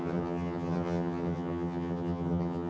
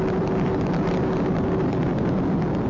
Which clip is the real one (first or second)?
second